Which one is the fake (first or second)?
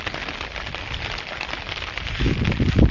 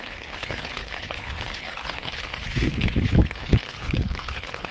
second